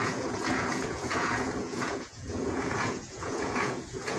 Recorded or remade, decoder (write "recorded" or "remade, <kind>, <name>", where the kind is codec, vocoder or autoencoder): remade, vocoder, Vocos